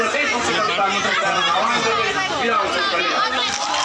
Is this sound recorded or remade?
recorded